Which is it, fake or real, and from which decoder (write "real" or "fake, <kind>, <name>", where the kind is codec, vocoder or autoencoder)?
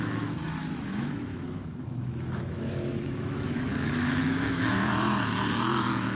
fake, autoencoder, DAC-VAE